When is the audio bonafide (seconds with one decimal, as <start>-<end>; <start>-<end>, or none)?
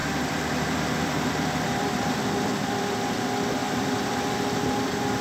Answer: 3.1-3.6; 4.2-5.2